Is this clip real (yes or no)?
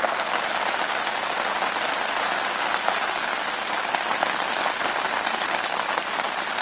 yes